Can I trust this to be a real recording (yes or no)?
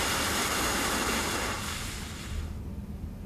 yes